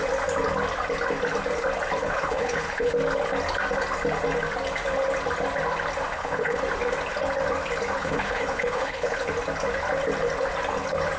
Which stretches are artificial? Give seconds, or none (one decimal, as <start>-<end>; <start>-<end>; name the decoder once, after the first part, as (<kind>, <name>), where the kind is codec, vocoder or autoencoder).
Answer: 2.0-2.9 (codec, HILCodec); 6.1-6.6; 8.0-9.3